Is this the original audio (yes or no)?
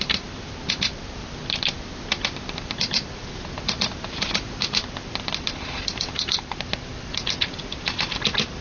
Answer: no